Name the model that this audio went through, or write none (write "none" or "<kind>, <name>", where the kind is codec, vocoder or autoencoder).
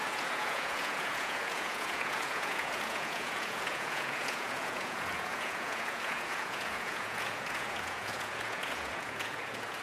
vocoder, Vocos